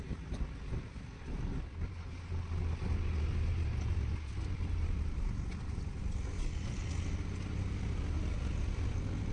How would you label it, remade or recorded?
recorded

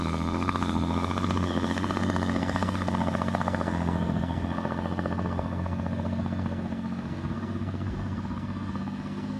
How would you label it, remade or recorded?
remade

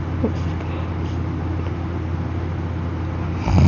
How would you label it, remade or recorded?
recorded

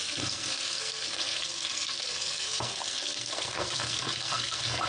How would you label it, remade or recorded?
remade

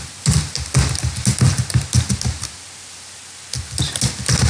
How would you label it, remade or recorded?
recorded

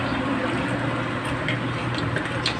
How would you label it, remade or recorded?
recorded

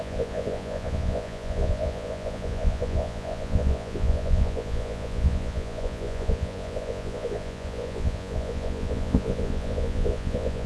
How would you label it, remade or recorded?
remade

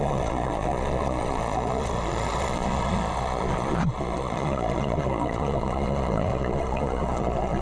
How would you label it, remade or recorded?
remade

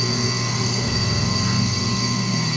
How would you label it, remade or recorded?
remade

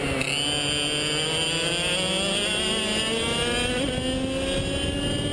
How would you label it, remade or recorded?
recorded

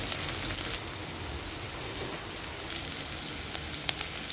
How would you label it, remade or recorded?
recorded